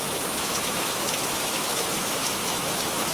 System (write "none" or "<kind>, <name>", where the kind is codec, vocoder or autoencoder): autoencoder, DAC-VAE